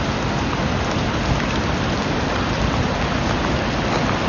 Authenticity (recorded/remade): recorded